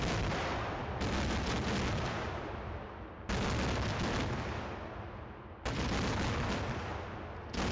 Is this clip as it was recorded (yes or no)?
yes